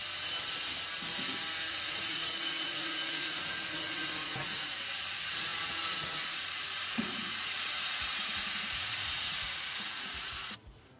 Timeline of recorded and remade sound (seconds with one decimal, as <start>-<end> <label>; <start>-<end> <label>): 0.0-1.7 recorded; 1.7-11.0 remade